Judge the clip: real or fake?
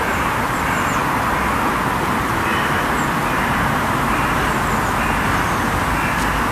real